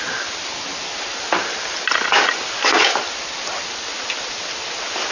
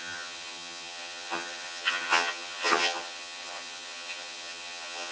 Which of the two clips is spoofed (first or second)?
second